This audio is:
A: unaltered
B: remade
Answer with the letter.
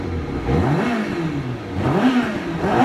A